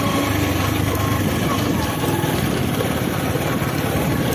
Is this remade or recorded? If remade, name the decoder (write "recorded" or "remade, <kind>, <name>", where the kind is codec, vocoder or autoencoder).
recorded